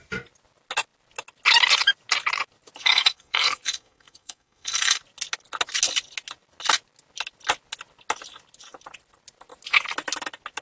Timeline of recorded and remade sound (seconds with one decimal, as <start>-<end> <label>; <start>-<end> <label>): 0.0-2.8 recorded; 2.8-5.0 remade; 5.0-10.6 recorded